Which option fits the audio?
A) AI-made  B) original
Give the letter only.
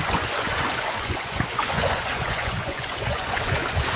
A